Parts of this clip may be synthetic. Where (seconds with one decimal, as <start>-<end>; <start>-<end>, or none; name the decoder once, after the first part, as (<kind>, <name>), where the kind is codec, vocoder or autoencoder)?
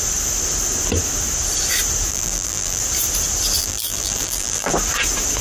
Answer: 2.1-2.8 (vocoder, BigVGAN v2); 3.6-4.7